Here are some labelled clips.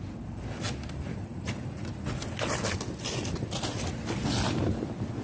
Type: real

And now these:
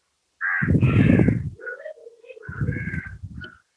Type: real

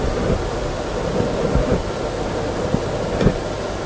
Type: real